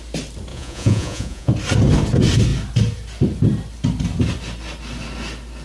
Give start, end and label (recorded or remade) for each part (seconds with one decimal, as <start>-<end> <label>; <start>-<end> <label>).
0.0-0.5 recorded; 0.5-1.5 remade; 1.5-5.6 recorded